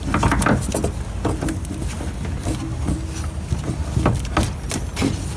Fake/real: real